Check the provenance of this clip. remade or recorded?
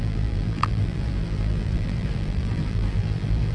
remade